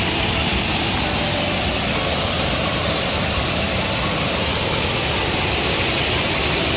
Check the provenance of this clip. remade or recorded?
recorded